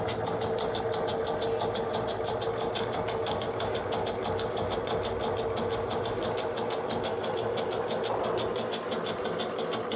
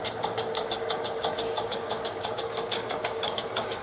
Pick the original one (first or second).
first